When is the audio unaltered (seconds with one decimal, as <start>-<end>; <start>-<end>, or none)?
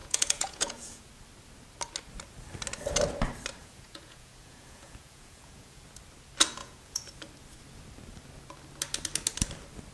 1.1-3.6; 5.9-6.6; 7.1-9.9